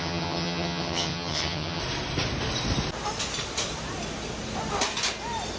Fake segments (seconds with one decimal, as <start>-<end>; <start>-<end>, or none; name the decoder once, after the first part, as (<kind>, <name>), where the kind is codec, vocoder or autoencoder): 0.0-1.8 (vocoder, HiFi-GAN)